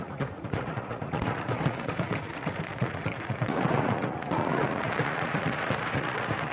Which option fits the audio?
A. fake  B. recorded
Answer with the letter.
A